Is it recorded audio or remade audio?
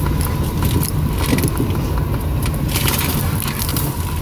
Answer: recorded